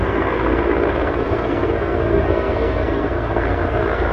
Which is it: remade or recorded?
remade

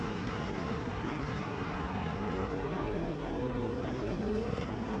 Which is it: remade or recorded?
remade